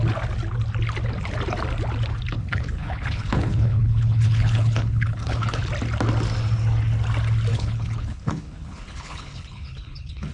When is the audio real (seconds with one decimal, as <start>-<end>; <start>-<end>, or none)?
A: 0.0-2.4; 5.6-7.5